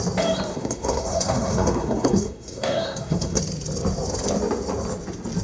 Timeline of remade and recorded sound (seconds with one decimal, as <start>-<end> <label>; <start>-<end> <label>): 0.0-0.5 recorded; 0.5-3.4 remade; 3.4-5.4 recorded

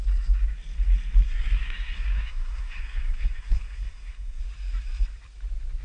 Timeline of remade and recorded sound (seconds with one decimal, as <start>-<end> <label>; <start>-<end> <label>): 0.0-1.2 recorded; 1.2-4.4 remade; 4.4-5.8 recorded

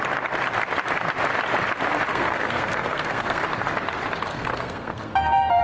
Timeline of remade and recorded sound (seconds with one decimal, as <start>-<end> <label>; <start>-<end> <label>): 0.0-2.1 recorded; 2.1-3.4 remade; 3.4-4.3 recorded; 4.3-5.6 remade